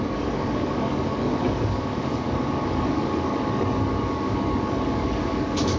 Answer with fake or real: fake